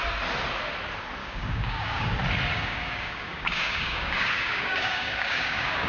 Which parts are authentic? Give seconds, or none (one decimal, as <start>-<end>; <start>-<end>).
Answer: 0.0-1.2; 2.1-2.5